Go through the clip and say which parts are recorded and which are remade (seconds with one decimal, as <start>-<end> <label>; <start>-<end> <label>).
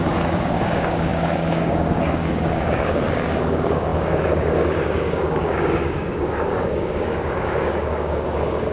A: 0.0-8.7 remade